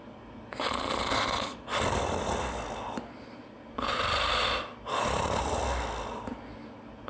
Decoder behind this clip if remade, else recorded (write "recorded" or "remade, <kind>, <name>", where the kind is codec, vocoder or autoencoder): recorded